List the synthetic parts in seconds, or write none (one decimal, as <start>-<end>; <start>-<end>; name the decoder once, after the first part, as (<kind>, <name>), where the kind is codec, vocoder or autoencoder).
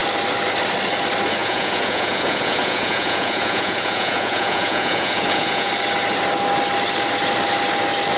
1.4-5.7 (vocoder, Vocos)